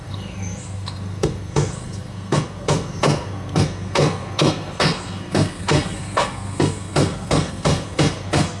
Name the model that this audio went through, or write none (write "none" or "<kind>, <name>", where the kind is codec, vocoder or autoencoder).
codec, SNAC